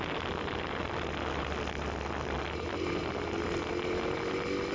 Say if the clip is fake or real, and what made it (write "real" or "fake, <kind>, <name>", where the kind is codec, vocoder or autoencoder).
real